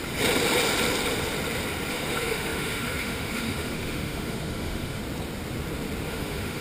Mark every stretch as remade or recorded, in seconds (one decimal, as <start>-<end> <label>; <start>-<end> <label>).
0.0-1.9 recorded; 1.9-5.0 remade; 5.0-6.1 recorded; 6.1-6.6 remade